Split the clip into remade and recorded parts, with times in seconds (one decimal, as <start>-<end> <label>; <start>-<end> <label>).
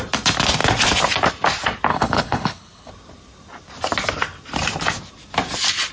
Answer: 0.0-1.9 recorded; 1.9-2.9 remade; 2.9-5.9 recorded